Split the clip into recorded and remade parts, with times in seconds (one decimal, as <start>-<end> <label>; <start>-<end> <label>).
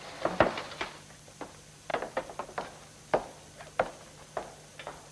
0.0-5.1 recorded